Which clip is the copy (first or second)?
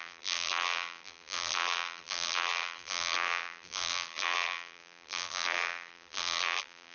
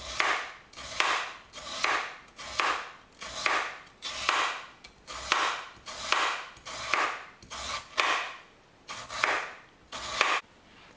first